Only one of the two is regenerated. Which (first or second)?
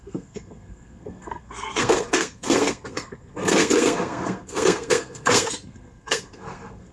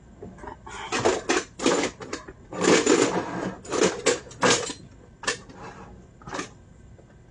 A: first